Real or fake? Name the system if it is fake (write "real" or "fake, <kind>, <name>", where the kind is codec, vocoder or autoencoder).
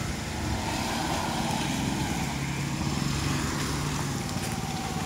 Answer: real